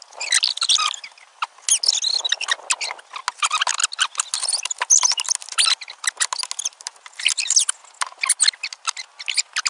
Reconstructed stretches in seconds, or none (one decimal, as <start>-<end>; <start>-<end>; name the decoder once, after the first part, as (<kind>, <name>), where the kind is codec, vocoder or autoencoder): none